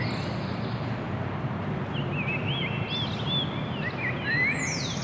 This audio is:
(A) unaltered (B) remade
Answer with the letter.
A